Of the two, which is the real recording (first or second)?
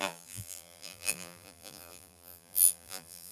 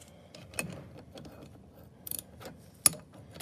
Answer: second